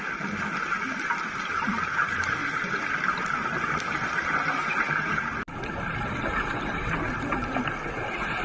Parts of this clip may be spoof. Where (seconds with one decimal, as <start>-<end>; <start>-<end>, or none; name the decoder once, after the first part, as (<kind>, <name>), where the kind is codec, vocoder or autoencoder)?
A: none